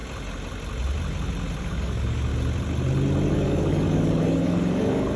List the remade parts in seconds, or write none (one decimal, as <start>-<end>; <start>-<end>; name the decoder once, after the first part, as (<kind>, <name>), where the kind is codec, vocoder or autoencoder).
1.6-2.3 (codec, DAC); 3.3-5.2